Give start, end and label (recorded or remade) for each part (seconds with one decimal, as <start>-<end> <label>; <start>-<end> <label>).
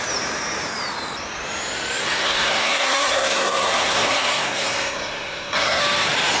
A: 0.0-2.0 recorded; 2.0-5.8 remade; 5.8-6.4 recorded